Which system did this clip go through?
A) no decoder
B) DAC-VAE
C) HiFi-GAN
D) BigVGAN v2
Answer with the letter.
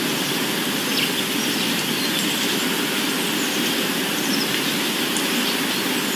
A